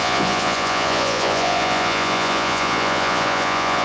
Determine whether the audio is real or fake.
fake